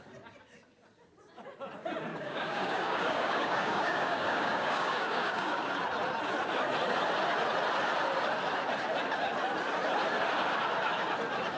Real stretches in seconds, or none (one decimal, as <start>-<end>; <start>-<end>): 0.0-2.1; 5.7-11.6